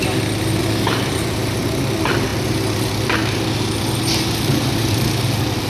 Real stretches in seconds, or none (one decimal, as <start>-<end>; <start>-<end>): 0.0-0.6; 1.6-3.2; 4.9-5.7